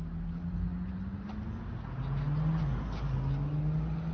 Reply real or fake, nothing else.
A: real